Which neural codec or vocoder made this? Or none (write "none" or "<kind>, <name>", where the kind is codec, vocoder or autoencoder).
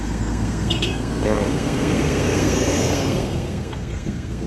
codec, SNAC